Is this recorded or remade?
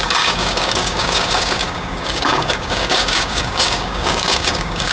remade